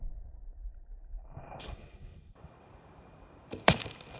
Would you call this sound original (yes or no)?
no